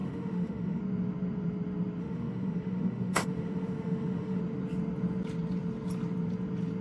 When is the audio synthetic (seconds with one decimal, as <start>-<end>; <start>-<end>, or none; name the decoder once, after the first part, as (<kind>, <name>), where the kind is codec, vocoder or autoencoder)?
0.0-0.8 (autoencoder, DAC-VAE); 2.0-4.4